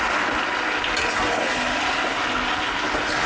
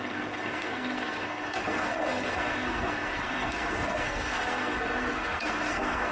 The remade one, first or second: second